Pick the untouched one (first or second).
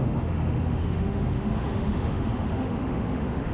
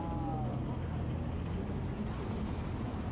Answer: second